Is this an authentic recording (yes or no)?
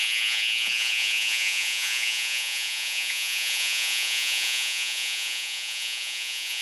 no